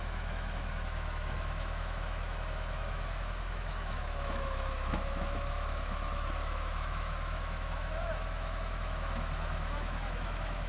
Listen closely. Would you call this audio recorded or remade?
remade